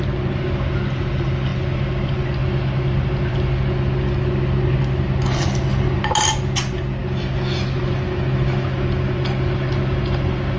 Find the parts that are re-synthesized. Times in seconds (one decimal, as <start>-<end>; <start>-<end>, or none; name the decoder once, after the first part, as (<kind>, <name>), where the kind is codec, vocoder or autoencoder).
none